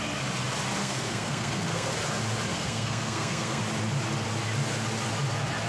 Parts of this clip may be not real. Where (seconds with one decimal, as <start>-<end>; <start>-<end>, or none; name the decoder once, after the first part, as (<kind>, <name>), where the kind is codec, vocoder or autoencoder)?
0.8-1.9 (codec, SNAC); 2.5-3.6